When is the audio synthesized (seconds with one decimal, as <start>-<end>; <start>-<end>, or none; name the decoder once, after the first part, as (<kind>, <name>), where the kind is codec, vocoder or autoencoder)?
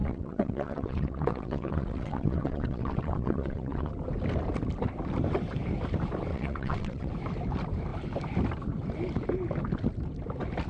0.0-3.9 (vocoder, WaveNeXt); 6.3-7.1